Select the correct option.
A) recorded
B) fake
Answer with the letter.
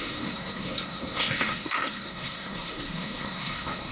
B